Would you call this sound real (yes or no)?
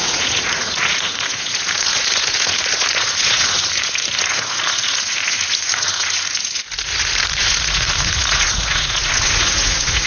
no